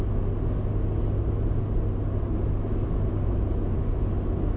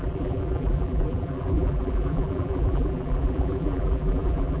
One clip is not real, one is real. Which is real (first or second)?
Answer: first